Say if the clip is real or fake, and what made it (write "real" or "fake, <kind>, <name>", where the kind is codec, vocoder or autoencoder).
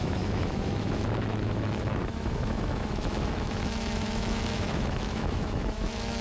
fake, autoencoder, DAC-VAE